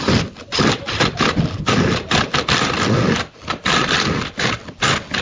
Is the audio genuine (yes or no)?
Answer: yes